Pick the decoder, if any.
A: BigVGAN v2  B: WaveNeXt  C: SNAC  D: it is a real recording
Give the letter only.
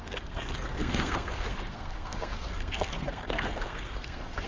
C